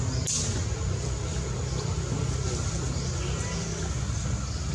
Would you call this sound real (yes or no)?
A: yes